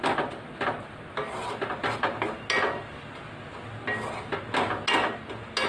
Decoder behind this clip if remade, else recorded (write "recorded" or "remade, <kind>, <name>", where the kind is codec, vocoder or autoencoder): recorded